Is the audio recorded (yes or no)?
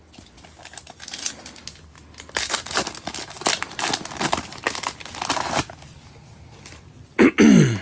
yes